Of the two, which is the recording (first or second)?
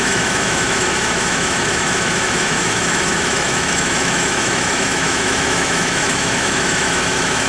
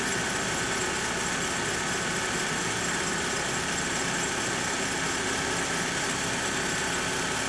second